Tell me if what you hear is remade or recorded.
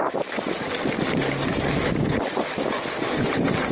recorded